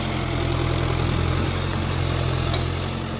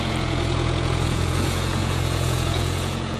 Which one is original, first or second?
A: first